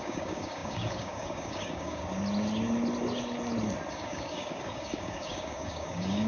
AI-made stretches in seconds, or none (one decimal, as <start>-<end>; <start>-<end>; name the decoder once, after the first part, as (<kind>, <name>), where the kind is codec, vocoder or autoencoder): 0.0-2.0 (codec, DAC); 3.9-6.3